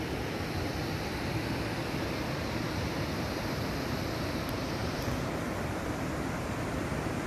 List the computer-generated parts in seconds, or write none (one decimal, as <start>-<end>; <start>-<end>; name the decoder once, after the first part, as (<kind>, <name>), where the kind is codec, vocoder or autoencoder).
none